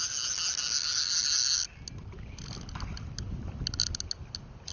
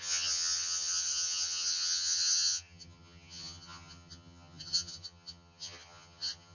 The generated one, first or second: second